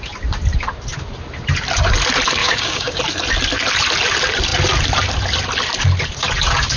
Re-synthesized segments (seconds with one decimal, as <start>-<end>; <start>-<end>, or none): 2.4-3.0